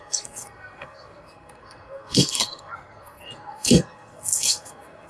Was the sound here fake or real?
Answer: fake